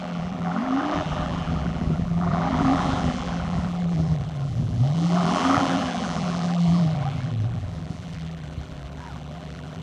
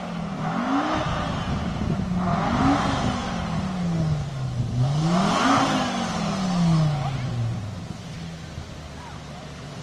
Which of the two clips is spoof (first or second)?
first